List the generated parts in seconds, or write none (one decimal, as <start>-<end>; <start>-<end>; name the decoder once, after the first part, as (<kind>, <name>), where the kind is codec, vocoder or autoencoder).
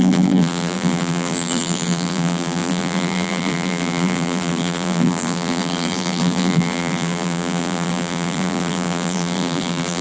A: 0.0-10.0 (vocoder, BigVGAN v2)